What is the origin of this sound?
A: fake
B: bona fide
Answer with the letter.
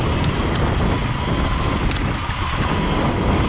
B